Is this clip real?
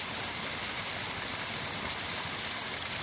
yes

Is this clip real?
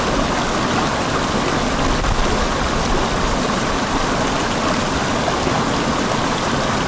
yes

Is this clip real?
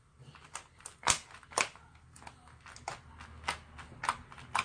yes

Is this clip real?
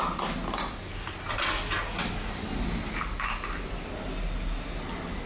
yes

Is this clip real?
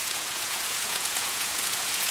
no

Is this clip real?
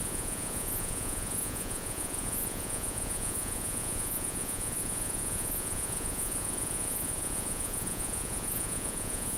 no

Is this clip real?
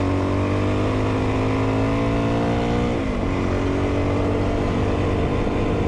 yes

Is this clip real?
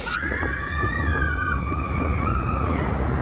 no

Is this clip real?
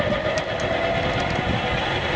yes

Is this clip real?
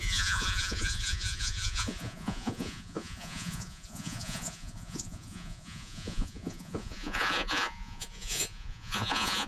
no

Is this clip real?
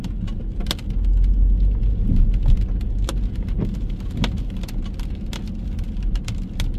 yes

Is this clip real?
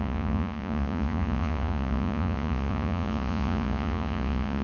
no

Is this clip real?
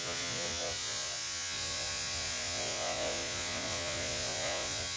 no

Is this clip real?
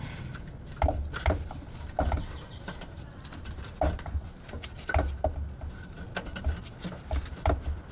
yes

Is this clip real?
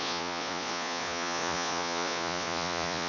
no